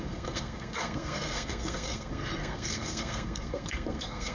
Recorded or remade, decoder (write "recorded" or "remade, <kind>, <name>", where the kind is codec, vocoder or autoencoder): remade, codec, SNAC